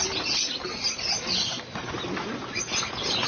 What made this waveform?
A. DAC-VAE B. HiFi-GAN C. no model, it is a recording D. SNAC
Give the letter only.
C